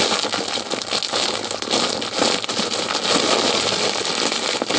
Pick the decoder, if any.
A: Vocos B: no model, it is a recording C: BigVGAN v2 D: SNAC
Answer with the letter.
B